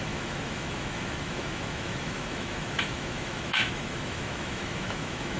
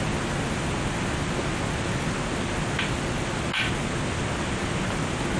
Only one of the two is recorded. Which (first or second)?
second